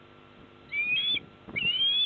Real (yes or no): yes